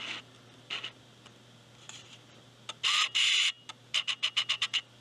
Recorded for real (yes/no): yes